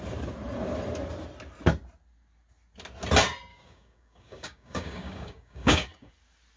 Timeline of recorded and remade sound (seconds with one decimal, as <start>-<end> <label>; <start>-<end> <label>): 0.0-3.5 recorded; 3.5-6.1 remade; 6.1-6.6 recorded